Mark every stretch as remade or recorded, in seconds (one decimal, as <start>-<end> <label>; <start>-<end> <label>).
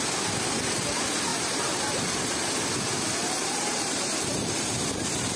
0.0-1.3 recorded; 1.3-2.0 remade; 2.0-3.2 recorded; 3.2-4.7 remade; 4.7-5.4 recorded